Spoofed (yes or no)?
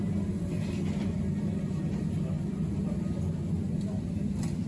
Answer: no